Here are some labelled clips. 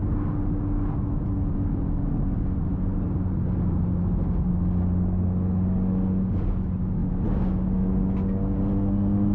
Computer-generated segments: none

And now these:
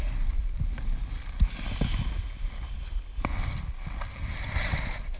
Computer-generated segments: none

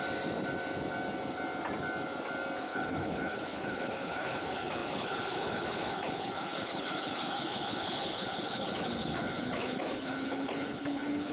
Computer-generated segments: 2.6-11.3 (codec, HILCodec)

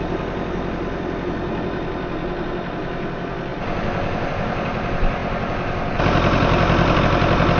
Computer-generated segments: none

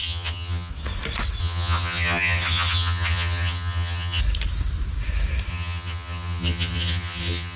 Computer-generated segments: 0.0-0.7 (vocoder, HiFi-GAN); 1.4-4.2; 5.5-7.6